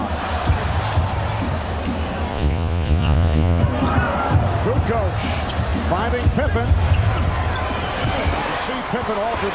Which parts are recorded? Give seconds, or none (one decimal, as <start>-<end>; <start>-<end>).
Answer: 0.0-2.3; 3.6-9.5